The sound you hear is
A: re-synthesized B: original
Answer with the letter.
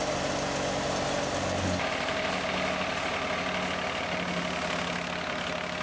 B